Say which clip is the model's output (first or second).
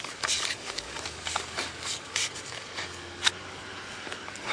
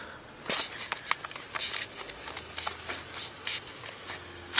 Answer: first